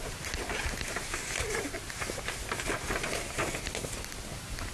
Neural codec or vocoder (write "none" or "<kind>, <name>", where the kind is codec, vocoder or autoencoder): none